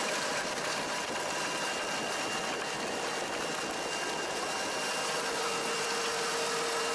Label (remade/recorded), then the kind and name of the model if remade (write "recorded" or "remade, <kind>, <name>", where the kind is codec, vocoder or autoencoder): recorded